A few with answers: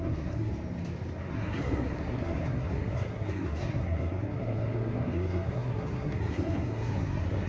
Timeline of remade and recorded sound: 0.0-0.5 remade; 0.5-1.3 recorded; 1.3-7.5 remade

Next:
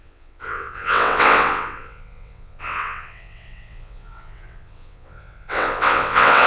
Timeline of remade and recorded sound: 0.0-6.5 remade

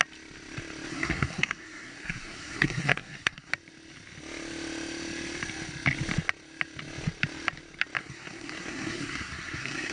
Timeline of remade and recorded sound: 0.0-0.9 recorded; 0.9-3.5 remade; 3.5-8.0 recorded; 8.0-9.9 remade

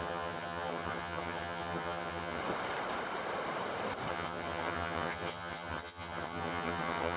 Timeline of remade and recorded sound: 0.0-2.4 remade; 2.4-4.1 recorded; 4.1-7.2 remade

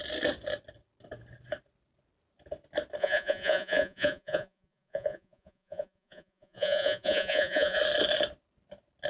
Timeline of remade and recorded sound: 0.0-3.0 recorded; 3.0-7.8 remade; 7.8-9.1 recorded

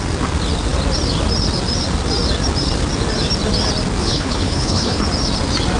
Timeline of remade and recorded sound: 0.0-4.0 recorded; 4.0-5.0 remade; 5.0-5.8 recorded

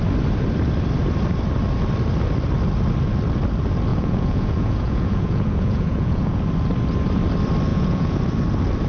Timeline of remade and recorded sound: 0.0-3.9 recorded; 3.9-6.4 remade; 6.4-7.7 recorded; 7.7-8.2 remade; 8.2-8.9 recorded

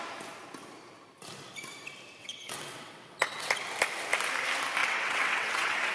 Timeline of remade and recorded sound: 0.0-2.2 recorded; 2.2-3.5 remade; 3.5-4.8 recorded; 4.8-5.9 remade